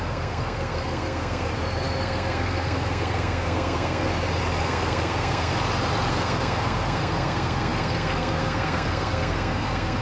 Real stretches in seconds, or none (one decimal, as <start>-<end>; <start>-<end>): 1.5-2.0; 4.1-4.6; 5.5-6.1